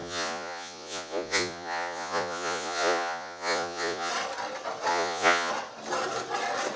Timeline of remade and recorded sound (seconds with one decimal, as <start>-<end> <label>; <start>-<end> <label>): 0.0-4.1 remade; 4.1-4.9 recorded; 4.9-5.5 remade; 5.5-6.8 recorded